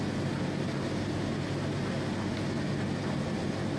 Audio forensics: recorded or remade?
recorded